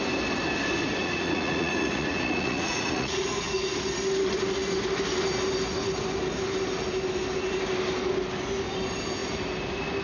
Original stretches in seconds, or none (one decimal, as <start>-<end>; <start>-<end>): 0.0-1.0; 3.8-10.0